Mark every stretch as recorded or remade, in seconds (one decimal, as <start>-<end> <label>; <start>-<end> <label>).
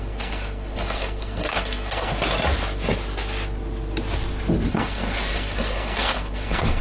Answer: 0.0-2.1 remade; 2.1-4.7 recorded; 4.7-6.8 remade